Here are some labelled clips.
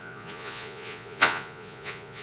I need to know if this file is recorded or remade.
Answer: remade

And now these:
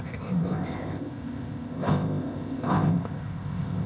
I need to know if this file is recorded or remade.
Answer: remade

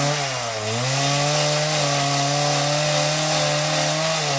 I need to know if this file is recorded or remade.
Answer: recorded